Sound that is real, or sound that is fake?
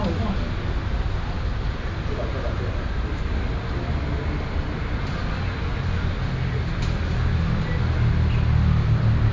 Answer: real